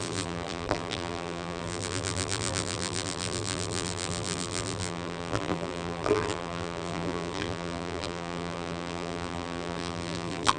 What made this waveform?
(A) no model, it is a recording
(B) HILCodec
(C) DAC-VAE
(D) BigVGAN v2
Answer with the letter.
D